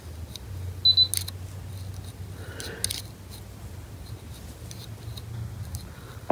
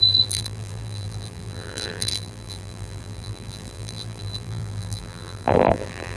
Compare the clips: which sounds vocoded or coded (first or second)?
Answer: second